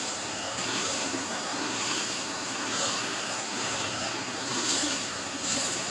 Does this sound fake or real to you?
fake